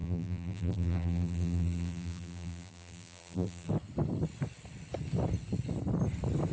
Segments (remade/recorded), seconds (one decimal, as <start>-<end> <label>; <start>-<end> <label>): 0.0-3.7 remade; 3.7-6.5 recorded